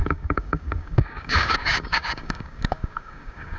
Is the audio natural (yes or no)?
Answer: no